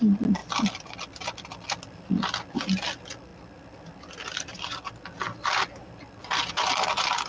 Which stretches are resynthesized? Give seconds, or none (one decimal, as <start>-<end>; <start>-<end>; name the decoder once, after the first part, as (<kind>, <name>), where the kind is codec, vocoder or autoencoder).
none